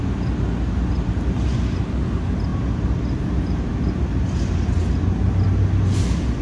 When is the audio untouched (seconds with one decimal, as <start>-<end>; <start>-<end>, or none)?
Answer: 0.0-6.4